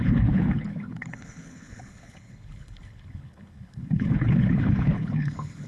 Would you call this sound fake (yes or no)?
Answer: yes